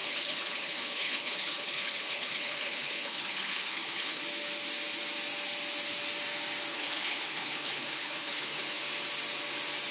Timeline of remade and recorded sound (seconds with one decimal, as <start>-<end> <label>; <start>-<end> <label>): 0.0-4.2 remade; 4.2-6.7 recorded; 6.7-8.6 remade; 8.6-9.9 recorded

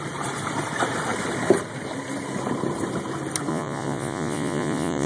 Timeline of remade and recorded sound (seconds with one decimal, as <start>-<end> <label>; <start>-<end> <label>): 0.0-3.5 recorded; 3.5-5.1 remade

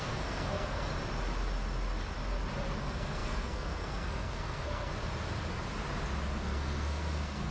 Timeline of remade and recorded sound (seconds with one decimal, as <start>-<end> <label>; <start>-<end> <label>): 0.0-0.9 remade; 0.9-2.8 recorded; 2.8-4.9 remade; 4.9-6.4 recorded; 6.4-7.5 remade